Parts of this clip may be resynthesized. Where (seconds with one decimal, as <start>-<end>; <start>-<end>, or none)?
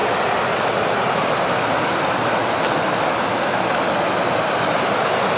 none